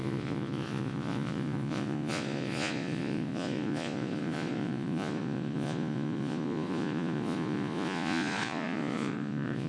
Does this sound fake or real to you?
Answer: fake